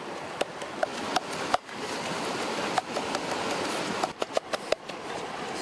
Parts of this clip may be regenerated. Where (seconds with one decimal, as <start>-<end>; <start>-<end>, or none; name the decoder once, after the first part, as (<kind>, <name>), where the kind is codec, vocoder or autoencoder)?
none